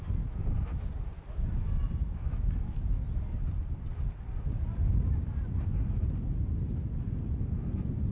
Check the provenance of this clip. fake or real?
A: real